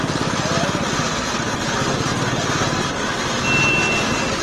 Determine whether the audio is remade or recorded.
recorded